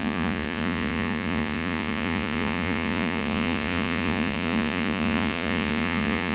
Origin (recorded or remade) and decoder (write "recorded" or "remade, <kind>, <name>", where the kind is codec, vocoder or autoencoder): remade, vocoder, Vocos